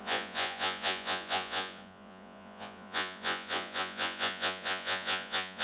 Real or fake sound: fake